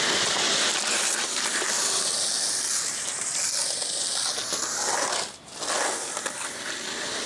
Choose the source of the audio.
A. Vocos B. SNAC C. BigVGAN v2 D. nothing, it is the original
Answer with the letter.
D